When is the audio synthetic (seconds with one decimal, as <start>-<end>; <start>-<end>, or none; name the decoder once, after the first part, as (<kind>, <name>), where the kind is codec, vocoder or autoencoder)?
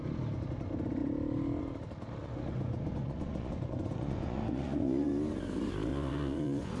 2.2-5.1 (vocoder, Vocos); 5.9-6.8